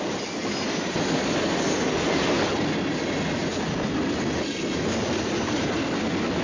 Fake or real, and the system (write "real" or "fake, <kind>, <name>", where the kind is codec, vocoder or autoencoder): real